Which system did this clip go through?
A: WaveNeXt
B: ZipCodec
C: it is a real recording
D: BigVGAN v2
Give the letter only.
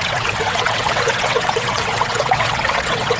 A